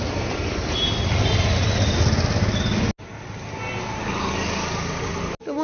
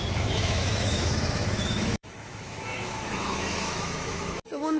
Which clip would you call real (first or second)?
first